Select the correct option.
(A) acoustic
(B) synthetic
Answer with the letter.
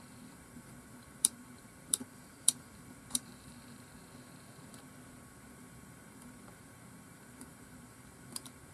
B